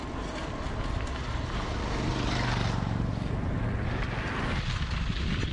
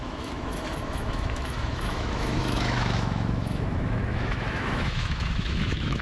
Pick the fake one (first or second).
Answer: second